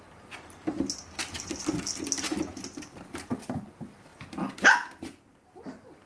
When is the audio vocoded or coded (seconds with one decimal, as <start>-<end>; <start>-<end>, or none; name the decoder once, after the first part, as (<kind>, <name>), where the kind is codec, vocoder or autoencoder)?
none